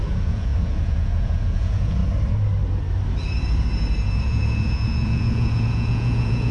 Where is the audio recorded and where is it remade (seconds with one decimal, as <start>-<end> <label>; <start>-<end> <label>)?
0.0-2.0 remade; 2.0-4.2 recorded; 4.2-6.5 remade